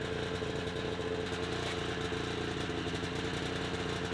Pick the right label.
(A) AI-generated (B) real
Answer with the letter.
B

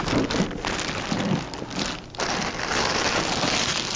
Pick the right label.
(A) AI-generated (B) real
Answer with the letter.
B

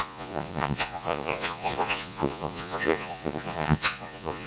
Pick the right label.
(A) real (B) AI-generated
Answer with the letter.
B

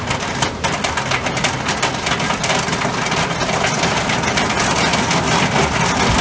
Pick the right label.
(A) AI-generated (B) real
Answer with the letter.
B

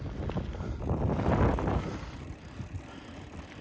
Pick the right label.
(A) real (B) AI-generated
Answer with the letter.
A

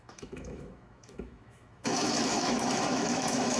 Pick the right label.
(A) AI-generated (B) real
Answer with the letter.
A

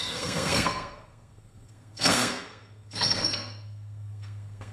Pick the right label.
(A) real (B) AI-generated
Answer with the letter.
B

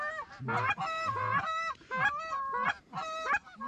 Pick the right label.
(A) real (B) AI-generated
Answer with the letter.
B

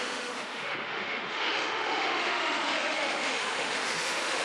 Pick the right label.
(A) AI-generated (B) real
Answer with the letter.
A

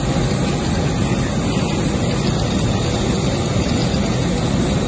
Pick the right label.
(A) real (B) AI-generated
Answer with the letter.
A